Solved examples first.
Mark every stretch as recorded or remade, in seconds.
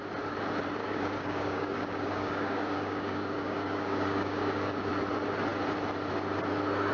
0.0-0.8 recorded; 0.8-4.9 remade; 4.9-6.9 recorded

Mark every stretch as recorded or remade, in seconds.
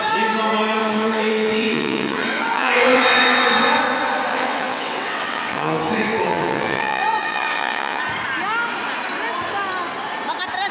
0.0-0.8 recorded; 0.8-3.8 remade; 3.8-4.3 recorded; 4.3-8.0 remade; 8.0-10.7 recorded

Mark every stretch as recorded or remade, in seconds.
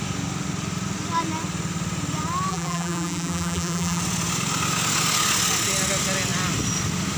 0.0-2.5 recorded; 2.5-4.0 remade; 4.0-7.2 recorded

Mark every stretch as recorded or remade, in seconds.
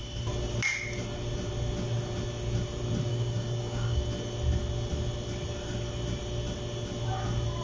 0.0-3.1 recorded; 3.1-4.0 remade; 4.0-7.6 recorded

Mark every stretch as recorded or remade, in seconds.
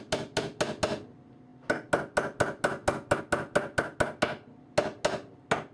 0.0-5.7 recorded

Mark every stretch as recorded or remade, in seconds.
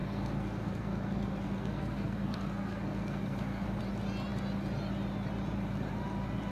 0.0-3.8 remade; 3.8-6.5 recorded